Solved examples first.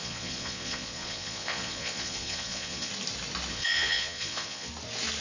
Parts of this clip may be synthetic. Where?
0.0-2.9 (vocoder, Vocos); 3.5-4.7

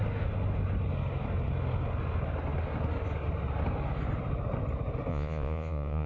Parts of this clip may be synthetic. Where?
5.1-6.1 (vocoder, Vocos)